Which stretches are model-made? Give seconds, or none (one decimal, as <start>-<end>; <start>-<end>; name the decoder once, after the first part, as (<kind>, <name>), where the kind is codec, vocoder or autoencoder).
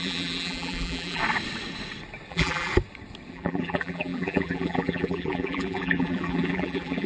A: 0.0-1.2 (vocoder, BigVGAN v2); 2.3-2.7; 3.3-7.1